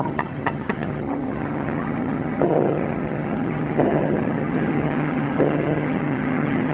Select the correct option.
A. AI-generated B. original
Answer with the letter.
A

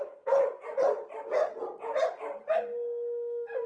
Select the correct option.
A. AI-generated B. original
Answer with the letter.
B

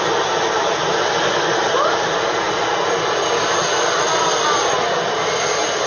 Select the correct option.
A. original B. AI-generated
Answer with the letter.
A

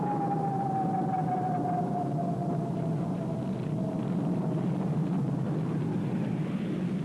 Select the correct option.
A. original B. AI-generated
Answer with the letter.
A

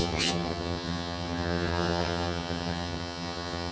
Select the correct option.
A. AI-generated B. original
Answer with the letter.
A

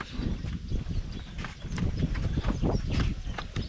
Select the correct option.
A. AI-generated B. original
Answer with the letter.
B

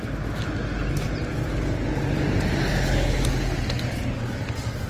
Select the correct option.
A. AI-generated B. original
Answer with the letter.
B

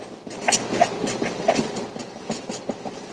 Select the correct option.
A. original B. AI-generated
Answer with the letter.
A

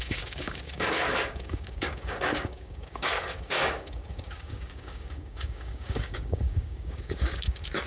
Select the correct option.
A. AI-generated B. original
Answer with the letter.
A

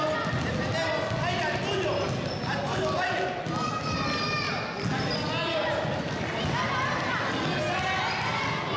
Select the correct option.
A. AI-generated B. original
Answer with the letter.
B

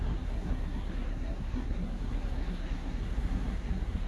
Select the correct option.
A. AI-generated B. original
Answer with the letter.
A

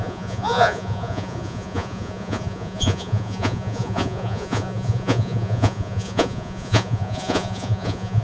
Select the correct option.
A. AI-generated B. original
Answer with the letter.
A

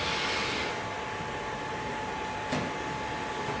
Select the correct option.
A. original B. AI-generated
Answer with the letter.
A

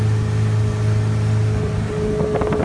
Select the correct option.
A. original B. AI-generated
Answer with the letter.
A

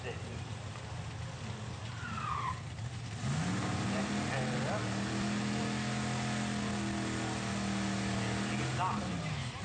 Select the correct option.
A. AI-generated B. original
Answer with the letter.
B